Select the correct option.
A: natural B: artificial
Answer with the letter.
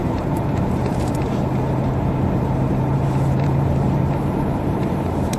B